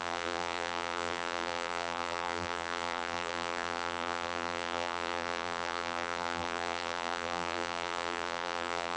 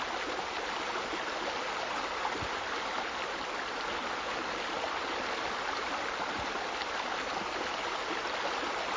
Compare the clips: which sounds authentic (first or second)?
second